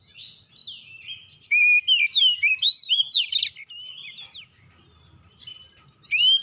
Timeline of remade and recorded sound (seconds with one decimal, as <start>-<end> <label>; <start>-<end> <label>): 0.0-6.4 recorded

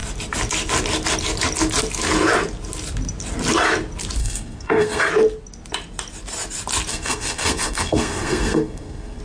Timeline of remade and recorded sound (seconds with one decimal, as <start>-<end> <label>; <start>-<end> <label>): 0.0-4.2 recorded; 4.2-5.1 remade; 5.1-6.9 recorded; 6.9-9.2 remade

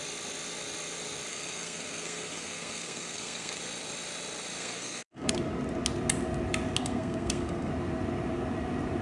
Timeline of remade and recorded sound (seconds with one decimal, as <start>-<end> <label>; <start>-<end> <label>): 0.0-1.3 recorded; 1.3-3.6 remade; 3.6-4.6 recorded; 4.6-5.3 remade; 5.3-6.8 recorded; 6.8-7.7 remade; 7.7-9.0 recorded

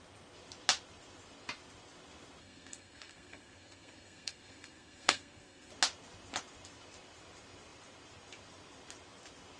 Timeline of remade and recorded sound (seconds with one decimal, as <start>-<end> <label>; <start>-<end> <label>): 0.0-2.4 recorded; 2.4-5.7 remade; 5.7-9.6 recorded

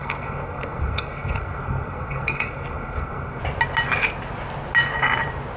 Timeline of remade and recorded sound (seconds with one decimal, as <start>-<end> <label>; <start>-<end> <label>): 0.0-3.4 remade; 3.4-5.6 recorded